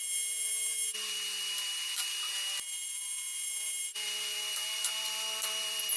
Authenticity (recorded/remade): remade